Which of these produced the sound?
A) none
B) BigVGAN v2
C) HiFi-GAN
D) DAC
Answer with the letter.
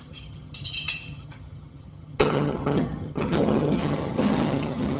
C